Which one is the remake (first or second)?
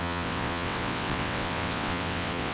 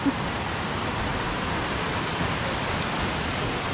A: first